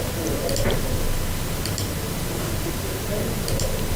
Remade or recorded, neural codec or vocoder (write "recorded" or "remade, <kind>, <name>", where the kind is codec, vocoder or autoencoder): recorded